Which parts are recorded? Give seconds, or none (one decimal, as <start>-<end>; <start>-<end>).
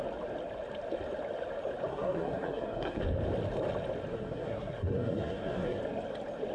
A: 0.0-1.9; 3.0-4.1; 5.8-6.5